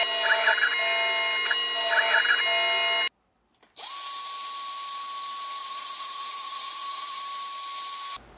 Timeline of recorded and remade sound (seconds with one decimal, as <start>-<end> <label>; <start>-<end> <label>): 0.0-5.6 recorded; 5.6-7.2 remade; 7.2-8.4 recorded